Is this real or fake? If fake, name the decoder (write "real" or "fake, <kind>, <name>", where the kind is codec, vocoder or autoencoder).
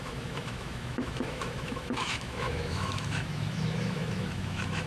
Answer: fake, autoencoder, DAC-VAE